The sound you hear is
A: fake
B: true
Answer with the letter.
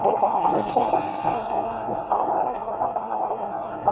A